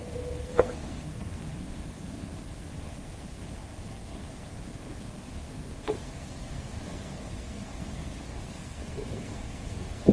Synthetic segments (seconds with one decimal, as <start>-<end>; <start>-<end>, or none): 0.0-10.1